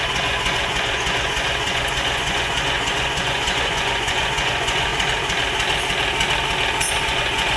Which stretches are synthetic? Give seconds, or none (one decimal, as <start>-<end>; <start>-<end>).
0.0-4.9; 6.9-7.6